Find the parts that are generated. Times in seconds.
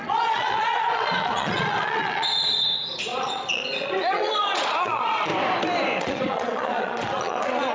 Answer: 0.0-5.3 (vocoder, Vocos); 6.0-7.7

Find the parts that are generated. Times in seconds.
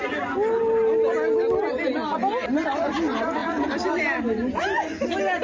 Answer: 3.4-4.2 (vocoder, BigVGAN v2)